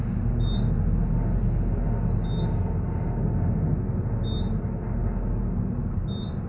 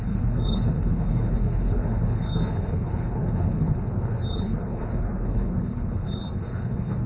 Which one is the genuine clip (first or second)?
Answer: first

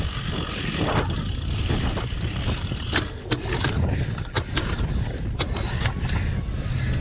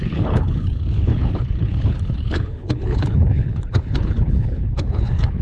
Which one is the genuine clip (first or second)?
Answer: first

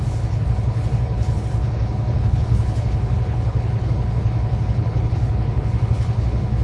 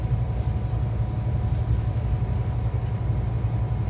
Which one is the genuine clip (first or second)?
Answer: second